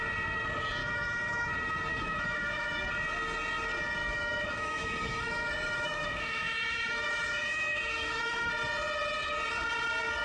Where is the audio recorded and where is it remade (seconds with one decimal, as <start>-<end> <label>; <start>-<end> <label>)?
0.0-0.8 recorded; 0.8-1.5 remade; 1.5-1.9 recorded; 1.9-2.8 remade; 2.8-4.0 recorded; 4.0-8.5 remade; 8.5-10.2 recorded